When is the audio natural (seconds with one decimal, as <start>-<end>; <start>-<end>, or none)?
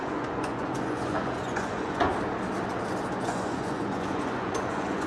2.1-3.1